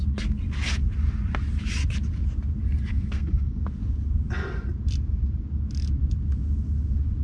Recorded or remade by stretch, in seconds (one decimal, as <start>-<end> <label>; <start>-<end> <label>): 0.0-2.9 recorded; 2.9-3.6 remade; 3.6-7.2 recorded